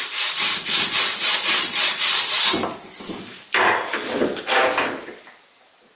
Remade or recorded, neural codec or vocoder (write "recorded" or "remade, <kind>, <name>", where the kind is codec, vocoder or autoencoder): recorded